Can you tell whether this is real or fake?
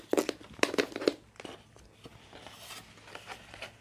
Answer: real